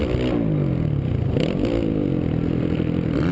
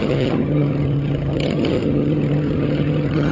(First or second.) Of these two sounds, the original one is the first